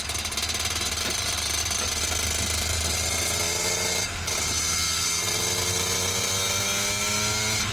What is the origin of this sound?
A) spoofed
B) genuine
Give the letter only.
B